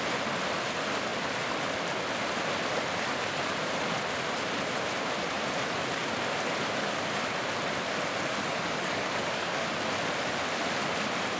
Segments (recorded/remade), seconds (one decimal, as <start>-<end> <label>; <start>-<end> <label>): 0.0-8.5 recorded; 8.5-9.6 remade; 9.6-11.4 recorded